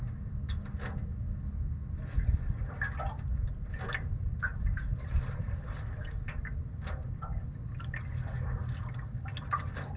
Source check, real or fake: real